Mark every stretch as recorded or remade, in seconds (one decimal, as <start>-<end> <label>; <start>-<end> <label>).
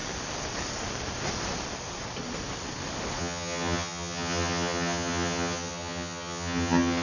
0.0-3.2 recorded; 3.2-7.0 remade